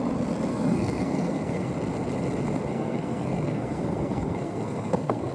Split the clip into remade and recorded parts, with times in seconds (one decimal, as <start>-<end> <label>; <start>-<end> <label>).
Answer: 0.0-0.5 recorded; 0.5-1.7 remade; 1.7-2.7 recorded; 2.7-5.3 remade